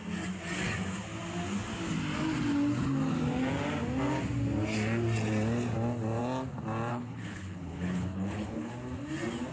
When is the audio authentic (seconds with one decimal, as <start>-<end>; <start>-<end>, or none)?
0.0-6.9; 8.7-9.5